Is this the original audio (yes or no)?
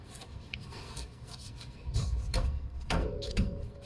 no